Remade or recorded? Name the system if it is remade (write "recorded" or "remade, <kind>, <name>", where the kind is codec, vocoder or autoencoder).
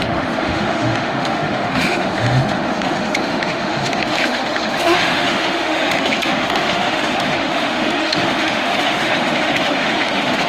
remade, autoencoder, DAC-VAE